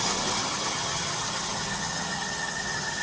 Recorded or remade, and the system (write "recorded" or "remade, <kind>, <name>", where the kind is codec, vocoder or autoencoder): remade, vocoder, HiFi-GAN